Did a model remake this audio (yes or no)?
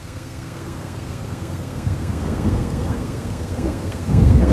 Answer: yes